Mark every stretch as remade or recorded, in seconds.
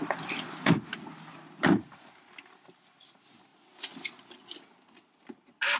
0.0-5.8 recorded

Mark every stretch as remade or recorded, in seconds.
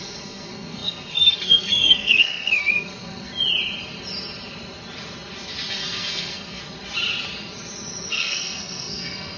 0.0-3.3 remade; 3.3-5.7 recorded; 5.7-6.6 remade; 6.6-8.1 recorded; 8.1-9.4 remade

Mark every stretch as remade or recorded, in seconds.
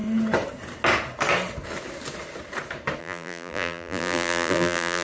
0.0-3.0 recorded; 3.0-5.0 remade